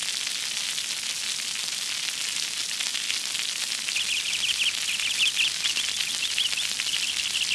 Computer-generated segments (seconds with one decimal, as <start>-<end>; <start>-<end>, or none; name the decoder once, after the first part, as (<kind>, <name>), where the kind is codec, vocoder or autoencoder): none